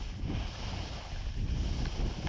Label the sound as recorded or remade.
recorded